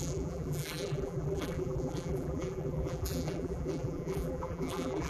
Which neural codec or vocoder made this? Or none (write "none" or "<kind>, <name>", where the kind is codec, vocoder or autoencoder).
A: vocoder, BigVGAN v2